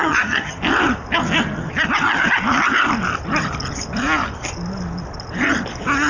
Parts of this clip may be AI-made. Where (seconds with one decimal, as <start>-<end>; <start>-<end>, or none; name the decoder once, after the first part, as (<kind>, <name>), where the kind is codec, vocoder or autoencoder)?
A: 0.0-0.6 (vocoder, HiFi-GAN)